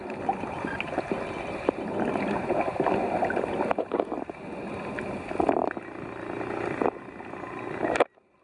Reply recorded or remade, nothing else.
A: recorded